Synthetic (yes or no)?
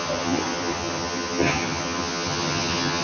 yes